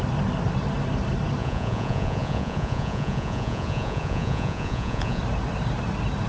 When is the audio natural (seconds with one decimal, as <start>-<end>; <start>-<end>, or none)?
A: 0.0-1.4; 5.2-6.3